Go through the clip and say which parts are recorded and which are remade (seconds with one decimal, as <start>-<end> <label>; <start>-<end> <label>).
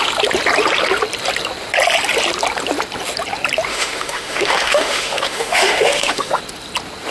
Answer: 0.0-3.7 recorded; 3.7-6.4 remade; 6.4-7.1 recorded